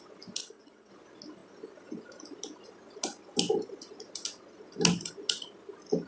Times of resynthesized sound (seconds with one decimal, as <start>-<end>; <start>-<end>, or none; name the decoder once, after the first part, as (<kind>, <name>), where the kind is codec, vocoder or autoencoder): 0.4-0.9 (vocoder, WaveNeXt)